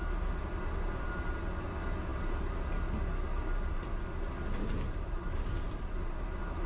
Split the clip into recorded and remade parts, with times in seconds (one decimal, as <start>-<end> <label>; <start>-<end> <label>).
0.0-6.7 recorded